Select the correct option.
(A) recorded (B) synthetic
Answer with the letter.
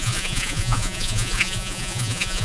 B